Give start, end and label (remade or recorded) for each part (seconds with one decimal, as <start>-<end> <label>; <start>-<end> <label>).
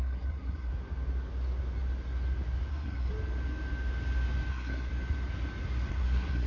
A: 0.0-0.7 remade; 0.7-2.7 recorded; 2.7-3.1 remade; 3.1-4.5 recorded; 4.5-4.9 remade; 4.9-5.9 recorded; 5.9-6.5 remade